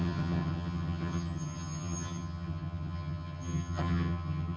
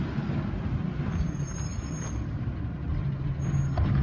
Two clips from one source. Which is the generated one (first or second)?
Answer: first